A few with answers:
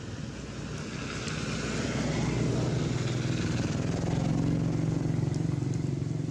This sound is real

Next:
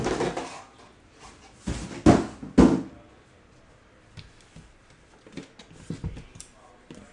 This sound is real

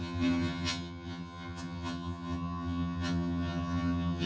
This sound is fake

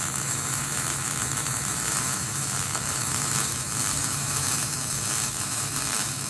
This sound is fake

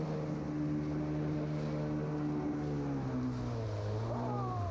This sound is real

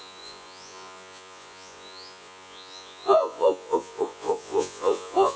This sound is fake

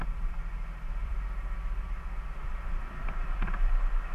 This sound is fake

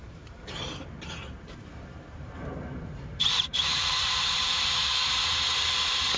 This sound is fake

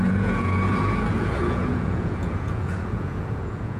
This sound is fake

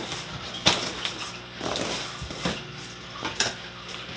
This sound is real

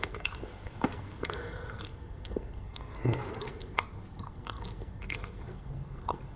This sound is fake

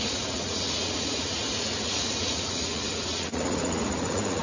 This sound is fake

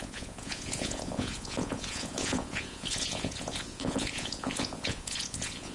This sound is fake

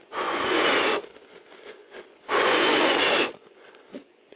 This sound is fake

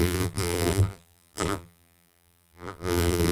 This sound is fake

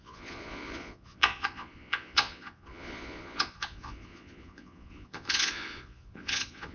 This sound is fake